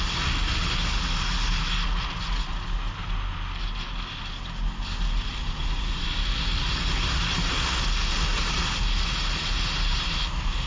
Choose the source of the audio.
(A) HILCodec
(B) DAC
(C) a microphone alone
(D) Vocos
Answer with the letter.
C